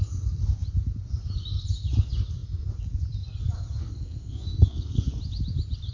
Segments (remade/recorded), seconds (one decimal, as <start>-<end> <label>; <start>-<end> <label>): 0.0-3.8 recorded; 3.8-5.2 remade; 5.2-5.9 recorded